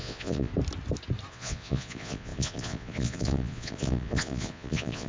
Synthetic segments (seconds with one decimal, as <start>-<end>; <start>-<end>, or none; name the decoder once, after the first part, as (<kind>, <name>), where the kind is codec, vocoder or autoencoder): 0.0-0.5 (vocoder, Vocos); 1.3-5.1